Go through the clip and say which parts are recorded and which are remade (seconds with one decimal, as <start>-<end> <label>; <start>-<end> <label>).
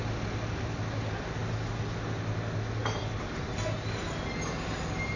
0.0-5.2 recorded